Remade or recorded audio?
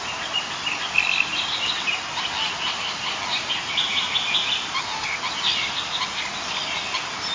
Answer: recorded